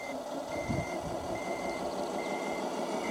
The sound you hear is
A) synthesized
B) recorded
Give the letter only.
A